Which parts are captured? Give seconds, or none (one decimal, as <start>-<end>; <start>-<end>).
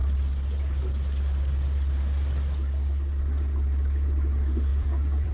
0.0-4.7